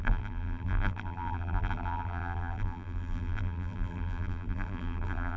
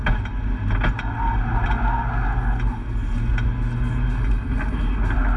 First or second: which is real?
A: second